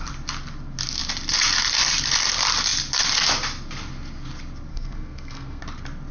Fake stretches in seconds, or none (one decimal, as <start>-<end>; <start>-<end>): 4.7-5.6